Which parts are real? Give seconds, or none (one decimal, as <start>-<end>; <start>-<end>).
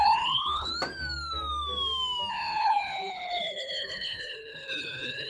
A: 0.7-2.3